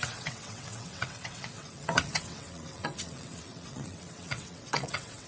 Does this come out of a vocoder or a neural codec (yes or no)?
yes